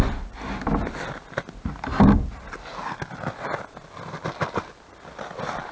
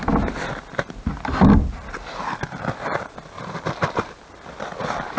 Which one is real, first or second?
first